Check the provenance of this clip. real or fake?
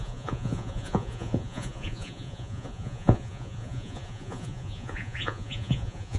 fake